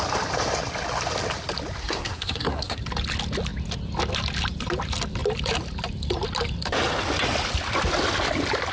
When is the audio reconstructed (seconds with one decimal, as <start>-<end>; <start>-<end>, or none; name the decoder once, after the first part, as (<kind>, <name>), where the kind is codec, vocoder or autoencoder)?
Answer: 1.8-2.8 (codec, SNAC)